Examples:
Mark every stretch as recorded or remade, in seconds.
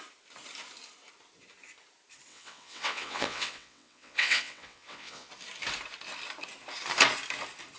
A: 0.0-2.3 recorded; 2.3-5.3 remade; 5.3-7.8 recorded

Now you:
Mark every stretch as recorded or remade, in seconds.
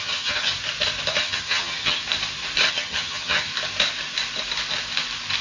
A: 0.0-0.5 remade; 0.5-1.2 recorded; 1.2-2.0 remade; 2.0-2.7 recorded; 2.7-3.5 remade; 3.5-5.4 recorded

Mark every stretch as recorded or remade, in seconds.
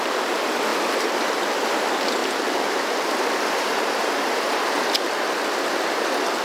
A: 0.0-0.7 recorded; 0.7-1.7 remade; 1.7-2.2 recorded; 2.2-3.8 remade; 3.8-6.4 recorded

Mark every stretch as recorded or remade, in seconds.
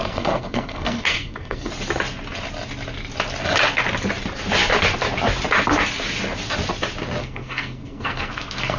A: 0.0-1.7 remade; 1.7-7.2 recorded; 7.2-8.8 remade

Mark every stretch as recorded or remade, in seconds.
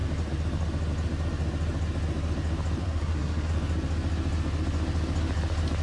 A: 0.0-2.8 recorded; 2.8-3.5 remade; 3.5-5.8 recorded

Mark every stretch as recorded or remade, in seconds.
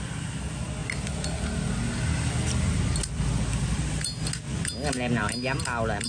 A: 0.0-6.1 recorded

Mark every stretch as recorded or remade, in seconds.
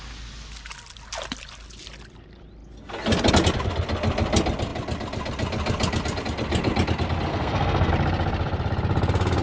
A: 0.0-7.3 recorded; 7.3-7.9 remade; 7.9-9.4 recorded